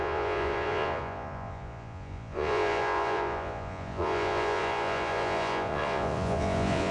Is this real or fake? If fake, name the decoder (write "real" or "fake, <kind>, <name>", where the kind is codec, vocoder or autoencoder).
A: fake, vocoder, Vocos